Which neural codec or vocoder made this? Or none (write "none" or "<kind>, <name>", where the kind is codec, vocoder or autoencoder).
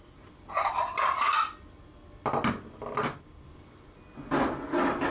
none